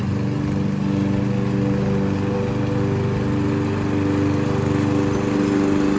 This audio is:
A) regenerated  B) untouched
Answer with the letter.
B